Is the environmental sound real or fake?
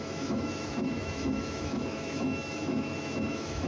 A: fake